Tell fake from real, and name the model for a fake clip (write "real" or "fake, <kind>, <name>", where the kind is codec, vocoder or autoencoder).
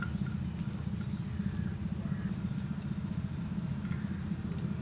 real